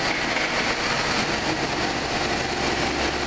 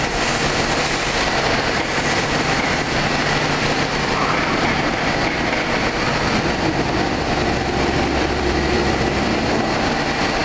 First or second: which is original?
first